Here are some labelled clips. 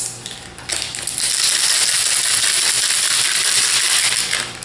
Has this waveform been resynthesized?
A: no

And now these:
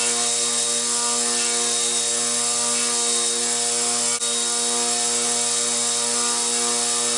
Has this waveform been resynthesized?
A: no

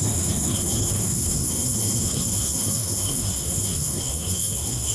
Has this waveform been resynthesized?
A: yes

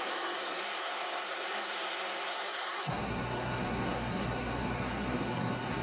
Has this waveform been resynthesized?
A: yes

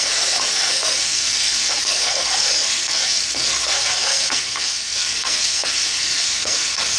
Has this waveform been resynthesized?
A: yes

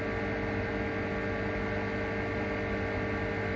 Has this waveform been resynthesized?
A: no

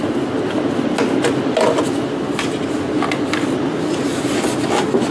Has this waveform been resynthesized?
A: no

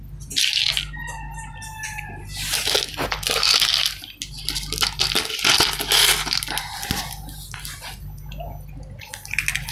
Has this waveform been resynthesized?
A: no